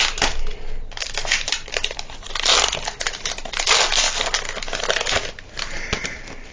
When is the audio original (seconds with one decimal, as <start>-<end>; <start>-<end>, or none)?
0.0-6.5